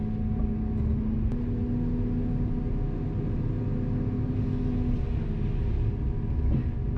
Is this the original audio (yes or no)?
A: yes